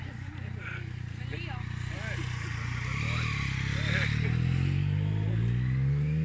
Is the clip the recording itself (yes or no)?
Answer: yes